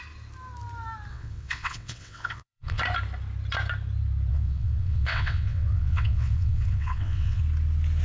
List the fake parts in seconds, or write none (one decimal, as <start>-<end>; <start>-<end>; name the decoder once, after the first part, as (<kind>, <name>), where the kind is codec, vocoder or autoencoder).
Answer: 1.1-2.8 (vocoder, WaveNeXt); 4.3-7.4